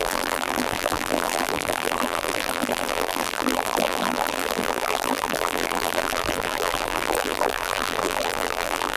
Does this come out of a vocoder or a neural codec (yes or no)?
yes